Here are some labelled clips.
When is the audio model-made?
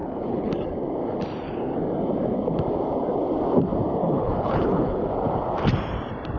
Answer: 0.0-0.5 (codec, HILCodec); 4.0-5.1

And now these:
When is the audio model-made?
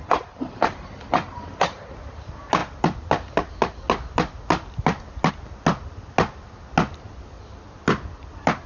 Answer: none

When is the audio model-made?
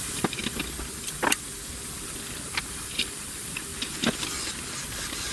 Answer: 0.0-0.4 (vocoder, BigVGAN v2); 2.6-3.7; 4.8-5.3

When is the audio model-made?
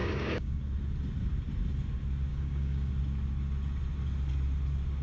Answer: 0.0-0.6 (codec, DAC); 2.3-2.9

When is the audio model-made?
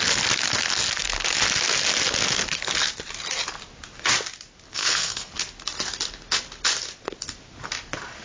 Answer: 4.7-5.3 (codec, SNAC)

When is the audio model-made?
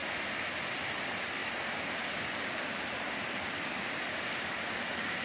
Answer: none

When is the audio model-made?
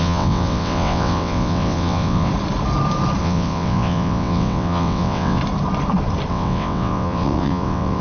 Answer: 0.0-2.3 (vocoder, WaveNeXt); 3.2-5.4; 6.3-8.0